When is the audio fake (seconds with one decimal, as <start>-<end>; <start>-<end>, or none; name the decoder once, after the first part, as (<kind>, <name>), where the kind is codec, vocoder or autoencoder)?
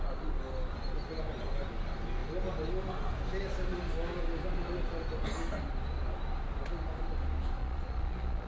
7.6-8.5 (vocoder, Vocos)